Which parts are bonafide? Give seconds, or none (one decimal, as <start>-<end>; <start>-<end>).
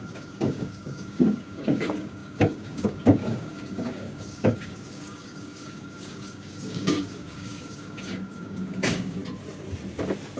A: 9.2-10.4